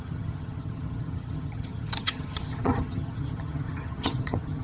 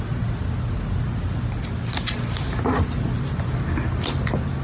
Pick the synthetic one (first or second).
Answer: first